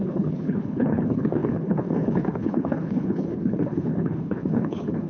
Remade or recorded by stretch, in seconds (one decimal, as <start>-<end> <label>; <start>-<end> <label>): 0.0-5.1 remade